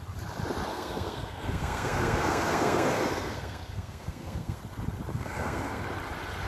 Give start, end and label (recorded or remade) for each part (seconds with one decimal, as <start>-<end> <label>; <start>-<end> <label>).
0.0-0.7 recorded; 0.7-4.6 remade; 4.6-5.1 recorded; 5.1-5.8 remade; 5.8-6.5 recorded